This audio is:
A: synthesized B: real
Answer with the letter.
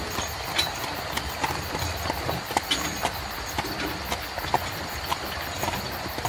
B